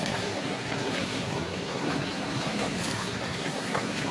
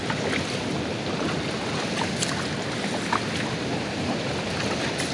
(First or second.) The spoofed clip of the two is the first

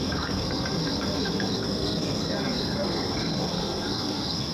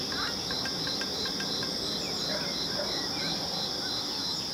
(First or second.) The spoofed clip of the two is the first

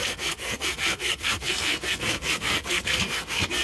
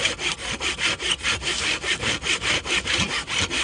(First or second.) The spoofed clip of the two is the first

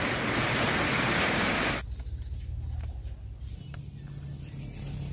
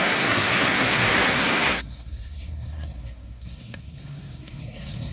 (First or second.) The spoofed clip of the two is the second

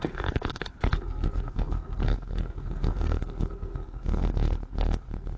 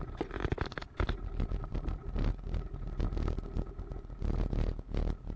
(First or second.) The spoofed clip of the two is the first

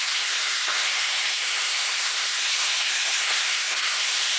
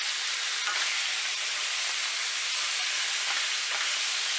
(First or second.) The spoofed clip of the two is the first